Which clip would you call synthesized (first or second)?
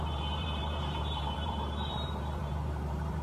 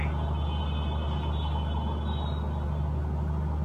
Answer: first